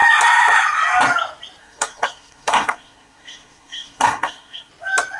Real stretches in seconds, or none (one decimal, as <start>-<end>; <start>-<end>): 0.0-1.6; 4.7-5.2